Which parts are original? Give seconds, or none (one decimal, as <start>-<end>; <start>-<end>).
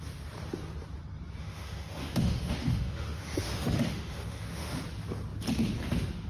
0.0-1.4; 4.7-6.3